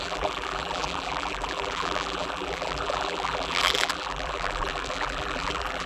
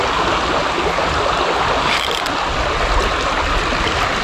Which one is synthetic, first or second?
first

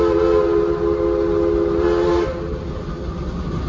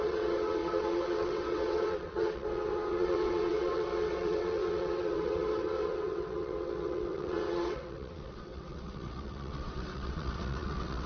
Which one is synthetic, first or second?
second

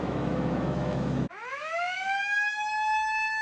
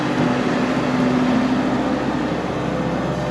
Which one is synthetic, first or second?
first